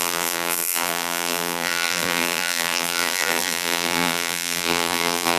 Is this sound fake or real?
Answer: fake